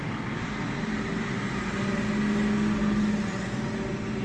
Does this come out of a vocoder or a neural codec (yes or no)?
no